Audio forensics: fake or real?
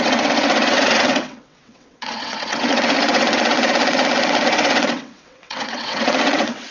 fake